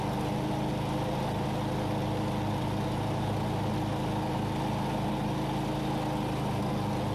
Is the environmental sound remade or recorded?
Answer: recorded